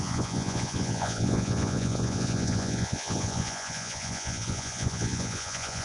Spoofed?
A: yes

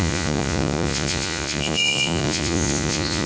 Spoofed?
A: yes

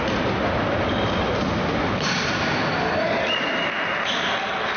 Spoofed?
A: no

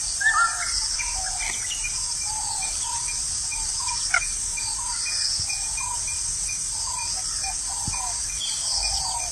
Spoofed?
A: no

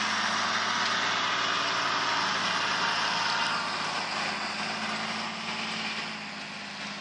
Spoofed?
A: no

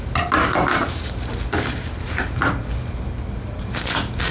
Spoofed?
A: no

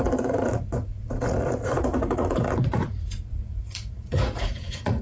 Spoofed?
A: yes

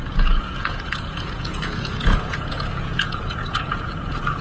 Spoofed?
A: yes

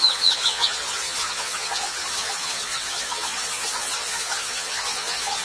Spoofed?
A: yes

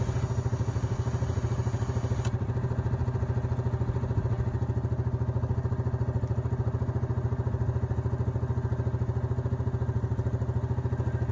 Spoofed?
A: no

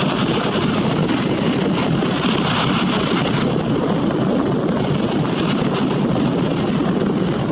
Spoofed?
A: no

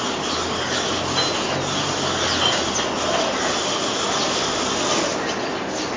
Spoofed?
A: no